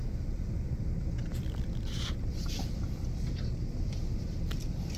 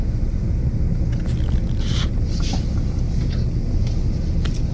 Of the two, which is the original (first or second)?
second